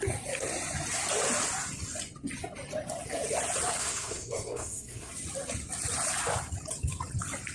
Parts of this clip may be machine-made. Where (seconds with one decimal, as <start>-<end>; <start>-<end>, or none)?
3.8-5.1